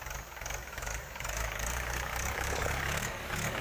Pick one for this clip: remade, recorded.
remade